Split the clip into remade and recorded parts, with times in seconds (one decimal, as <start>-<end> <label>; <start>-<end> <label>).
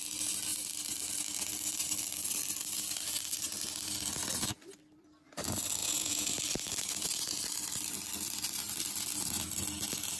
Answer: 0.0-5.8 recorded; 5.8-6.3 remade; 6.3-10.2 recorded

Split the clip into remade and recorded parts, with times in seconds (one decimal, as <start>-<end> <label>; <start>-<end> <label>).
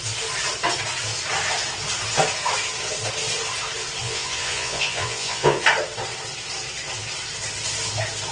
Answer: 0.0-4.0 recorded; 4.0-5.6 remade; 5.6-8.3 recorded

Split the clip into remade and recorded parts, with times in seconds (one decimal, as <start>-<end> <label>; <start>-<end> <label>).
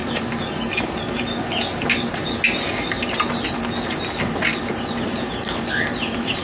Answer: 0.0-6.4 recorded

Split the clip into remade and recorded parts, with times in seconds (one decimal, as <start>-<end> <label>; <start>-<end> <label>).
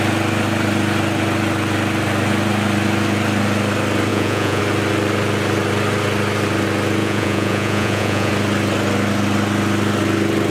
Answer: 0.0-4.1 recorded; 4.1-4.6 remade; 4.6-7.0 recorded; 7.0-8.3 remade; 8.3-10.5 recorded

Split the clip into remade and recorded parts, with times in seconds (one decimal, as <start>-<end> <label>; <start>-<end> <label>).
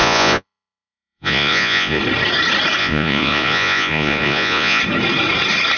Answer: 0.0-2.0 remade; 2.0-2.8 recorded; 2.8-4.8 remade; 4.8-5.8 recorded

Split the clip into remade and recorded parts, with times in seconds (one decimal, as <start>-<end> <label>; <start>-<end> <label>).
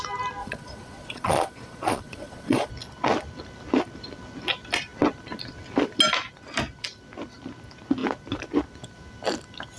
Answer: 0.0-0.4 recorded; 0.4-2.7 remade; 2.7-9.8 recorded